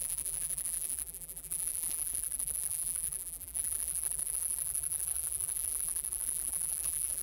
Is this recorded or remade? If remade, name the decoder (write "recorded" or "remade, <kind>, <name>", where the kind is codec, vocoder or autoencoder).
remade, vocoder, BigVGAN v2